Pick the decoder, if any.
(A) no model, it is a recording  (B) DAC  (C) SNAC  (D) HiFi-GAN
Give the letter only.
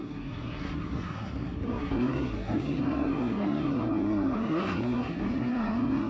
C